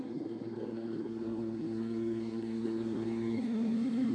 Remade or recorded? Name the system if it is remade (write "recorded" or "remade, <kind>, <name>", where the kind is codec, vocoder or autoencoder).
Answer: remade, codec, SNAC